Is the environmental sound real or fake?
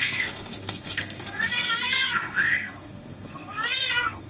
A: fake